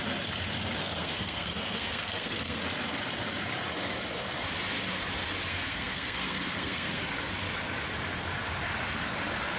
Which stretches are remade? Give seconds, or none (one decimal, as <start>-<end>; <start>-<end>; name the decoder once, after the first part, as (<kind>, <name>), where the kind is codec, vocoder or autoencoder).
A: 0.8-2.6 (codec, SNAC); 5.5-7.0